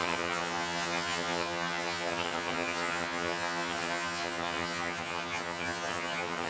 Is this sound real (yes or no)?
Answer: no